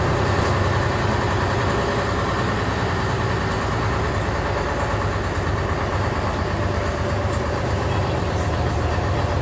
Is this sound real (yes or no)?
yes